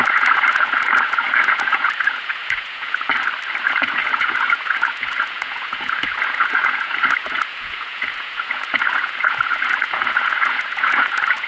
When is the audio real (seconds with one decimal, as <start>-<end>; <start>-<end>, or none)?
3.1-3.6